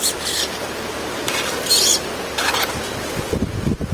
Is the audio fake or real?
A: real